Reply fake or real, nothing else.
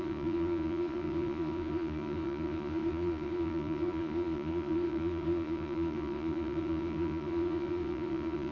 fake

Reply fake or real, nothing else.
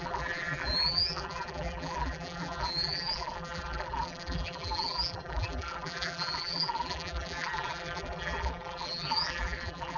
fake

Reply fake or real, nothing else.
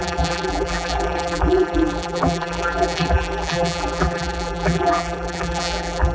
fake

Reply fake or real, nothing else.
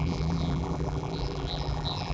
fake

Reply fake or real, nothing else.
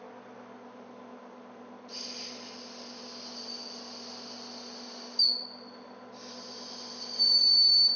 real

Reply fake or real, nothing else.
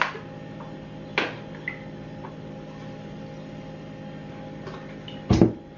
real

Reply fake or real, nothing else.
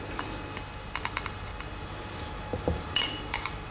real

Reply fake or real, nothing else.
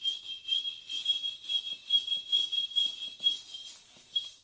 real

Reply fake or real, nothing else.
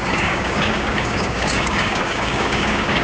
fake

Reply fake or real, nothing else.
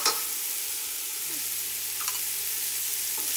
real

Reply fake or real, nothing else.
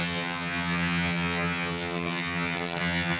fake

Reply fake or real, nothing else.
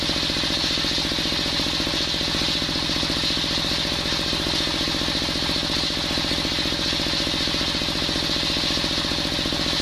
real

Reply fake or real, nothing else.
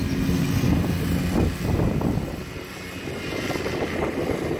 real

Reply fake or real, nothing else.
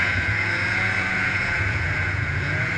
fake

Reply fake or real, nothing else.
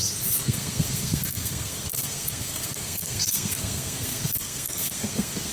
fake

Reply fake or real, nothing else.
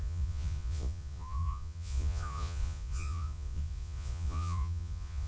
fake